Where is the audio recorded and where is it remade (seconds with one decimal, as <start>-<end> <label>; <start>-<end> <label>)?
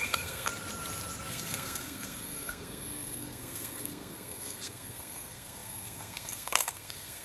0.0-0.5 remade; 0.5-1.3 recorded; 1.3-7.2 remade